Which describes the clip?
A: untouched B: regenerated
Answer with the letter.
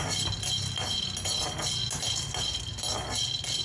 A